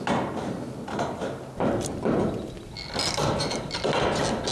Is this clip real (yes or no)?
yes